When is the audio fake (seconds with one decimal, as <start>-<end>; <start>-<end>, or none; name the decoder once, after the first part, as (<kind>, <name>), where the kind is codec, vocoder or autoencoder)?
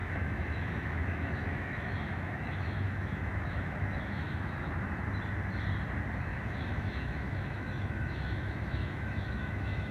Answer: 0.0-4.7 (autoencoder, DAC-VAE); 6.3-9.9